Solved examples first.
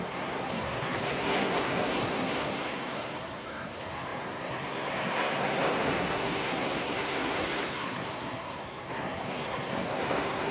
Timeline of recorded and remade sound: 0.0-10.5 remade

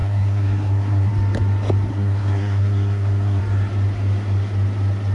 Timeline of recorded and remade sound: 0.0-1.1 remade; 1.1-1.9 recorded; 1.9-3.4 remade; 3.4-5.1 recorded

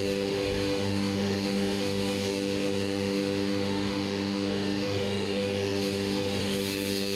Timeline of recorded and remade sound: 0.0-7.2 remade

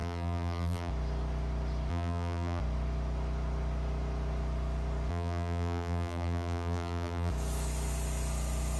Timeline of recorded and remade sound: 0.0-0.9 remade; 0.9-1.9 recorded; 1.9-2.6 remade; 2.6-5.1 recorded; 5.1-7.3 remade; 7.3-8.8 recorded

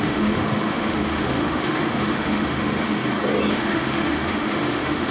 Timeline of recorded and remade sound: 0.0-3.0 remade; 3.0-3.5 recorded; 3.5-5.1 remade

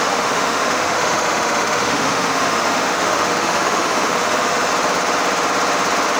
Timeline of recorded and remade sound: 0.0-4.7 remade; 4.7-6.2 recorded